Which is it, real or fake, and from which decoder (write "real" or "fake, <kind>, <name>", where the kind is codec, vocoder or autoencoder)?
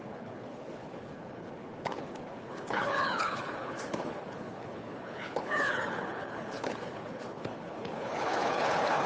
fake, codec, HILCodec